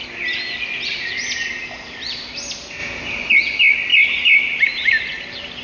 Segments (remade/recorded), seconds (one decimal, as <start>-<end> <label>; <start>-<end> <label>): 0.0-5.6 recorded